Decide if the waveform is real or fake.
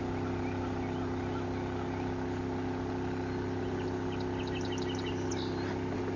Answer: real